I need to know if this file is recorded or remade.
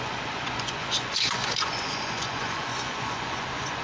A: remade